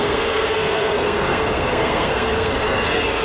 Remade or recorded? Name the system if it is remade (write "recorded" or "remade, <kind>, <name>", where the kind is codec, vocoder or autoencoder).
remade, codec, SNAC